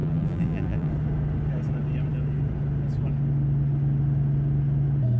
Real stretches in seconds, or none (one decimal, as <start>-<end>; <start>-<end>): 0.9-5.2